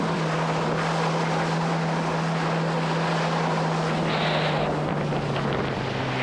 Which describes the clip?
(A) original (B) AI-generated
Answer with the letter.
A